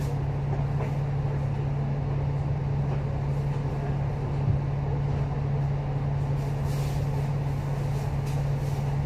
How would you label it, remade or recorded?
recorded